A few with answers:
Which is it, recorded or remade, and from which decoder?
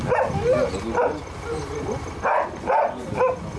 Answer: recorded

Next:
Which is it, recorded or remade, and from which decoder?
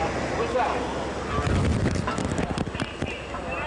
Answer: recorded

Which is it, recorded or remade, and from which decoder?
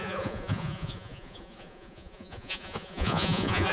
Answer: remade, vocoder, Vocos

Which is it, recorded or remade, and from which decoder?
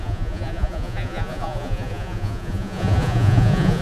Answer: remade, vocoder, Vocos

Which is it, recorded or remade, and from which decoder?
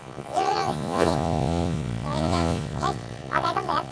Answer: remade, vocoder, Vocos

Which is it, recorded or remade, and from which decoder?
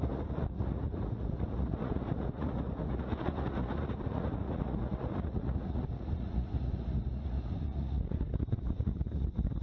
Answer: remade, vocoder, Vocos